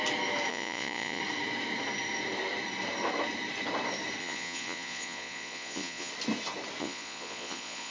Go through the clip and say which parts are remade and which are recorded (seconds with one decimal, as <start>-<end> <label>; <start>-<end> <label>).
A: 0.0-0.5 recorded; 0.5-1.2 remade; 1.2-4.2 recorded; 4.2-6.1 remade; 6.1-6.8 recorded; 6.8-7.9 remade